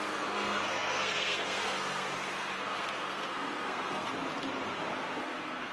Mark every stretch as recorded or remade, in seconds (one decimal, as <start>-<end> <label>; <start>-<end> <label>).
0.0-4.1 remade; 4.1-5.2 recorded; 5.2-5.7 remade